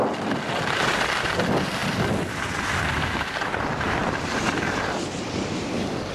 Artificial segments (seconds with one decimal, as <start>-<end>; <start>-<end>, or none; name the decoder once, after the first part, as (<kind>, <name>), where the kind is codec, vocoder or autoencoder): none